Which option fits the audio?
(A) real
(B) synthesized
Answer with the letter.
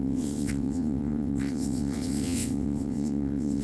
B